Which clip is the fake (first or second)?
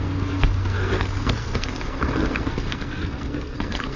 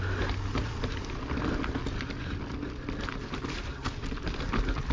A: first